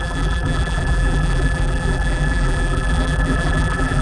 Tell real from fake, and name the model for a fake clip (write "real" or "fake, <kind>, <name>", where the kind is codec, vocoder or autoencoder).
fake, vocoder, BigVGAN v2